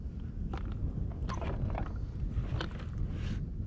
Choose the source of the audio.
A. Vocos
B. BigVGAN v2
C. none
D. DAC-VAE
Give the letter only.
C